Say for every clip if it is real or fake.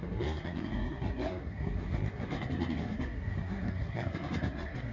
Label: fake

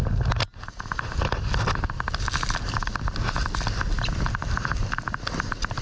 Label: real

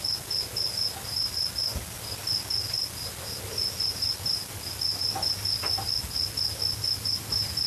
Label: real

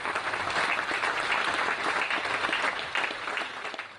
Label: real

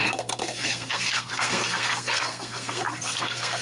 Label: fake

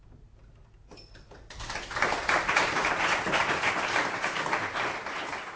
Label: real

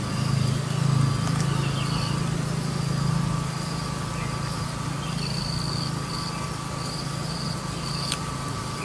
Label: real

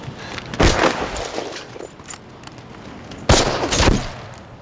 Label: real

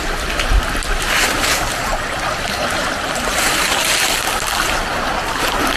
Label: real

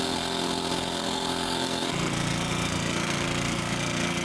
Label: fake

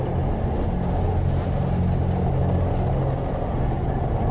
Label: real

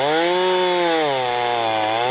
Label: real